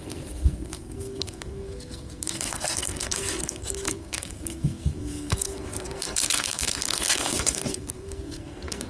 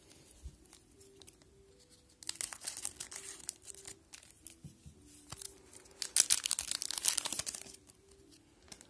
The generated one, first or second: first